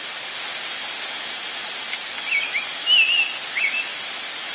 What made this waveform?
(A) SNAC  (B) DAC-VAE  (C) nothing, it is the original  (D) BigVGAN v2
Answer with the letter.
C